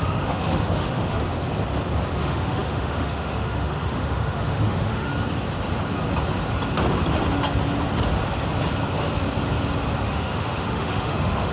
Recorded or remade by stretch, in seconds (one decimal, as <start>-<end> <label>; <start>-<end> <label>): 0.0-1.2 remade; 1.2-2.2 recorded; 2.2-5.1 remade; 5.1-10.0 recorded; 10.0-11.5 remade